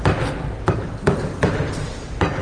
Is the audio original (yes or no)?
no